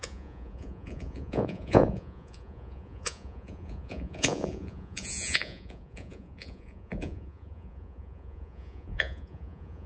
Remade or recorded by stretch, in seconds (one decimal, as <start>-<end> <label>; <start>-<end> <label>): 0.0-9.9 remade